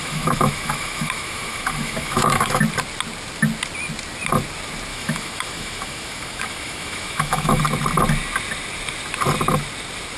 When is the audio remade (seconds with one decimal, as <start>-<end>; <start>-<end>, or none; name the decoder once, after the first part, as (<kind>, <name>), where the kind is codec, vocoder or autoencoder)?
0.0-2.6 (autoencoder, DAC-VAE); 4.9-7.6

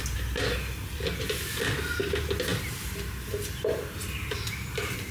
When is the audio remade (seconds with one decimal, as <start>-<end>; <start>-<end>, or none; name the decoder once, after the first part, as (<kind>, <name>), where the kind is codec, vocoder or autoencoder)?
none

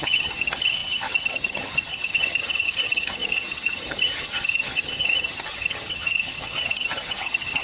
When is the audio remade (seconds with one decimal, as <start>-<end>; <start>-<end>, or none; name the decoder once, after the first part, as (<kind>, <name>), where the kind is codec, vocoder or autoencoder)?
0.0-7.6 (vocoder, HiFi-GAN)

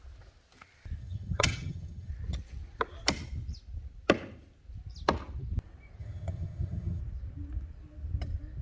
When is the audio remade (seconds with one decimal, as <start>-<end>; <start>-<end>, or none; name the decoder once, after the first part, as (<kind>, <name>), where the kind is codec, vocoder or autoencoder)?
1.0-2.1 (vocoder, HiFi-GAN); 6.0-7.0